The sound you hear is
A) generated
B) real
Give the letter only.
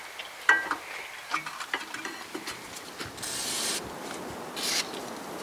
B